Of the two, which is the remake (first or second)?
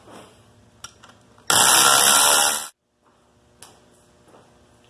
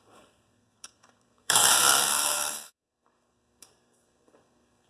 second